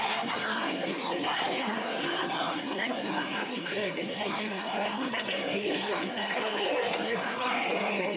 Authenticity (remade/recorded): remade